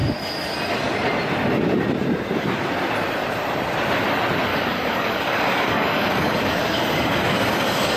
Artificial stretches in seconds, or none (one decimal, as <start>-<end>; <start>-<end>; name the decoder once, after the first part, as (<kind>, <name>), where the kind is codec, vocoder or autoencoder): 4.5-8.0 (codec, DAC)